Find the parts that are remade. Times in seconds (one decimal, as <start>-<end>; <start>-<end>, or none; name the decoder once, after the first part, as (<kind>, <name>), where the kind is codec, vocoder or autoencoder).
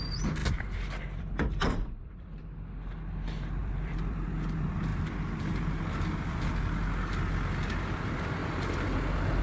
0.4-2.2 (vocoder, BigVGAN v2); 3.6-4.3